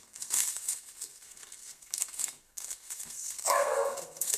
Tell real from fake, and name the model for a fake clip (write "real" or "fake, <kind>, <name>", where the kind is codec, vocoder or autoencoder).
fake, codec, SNAC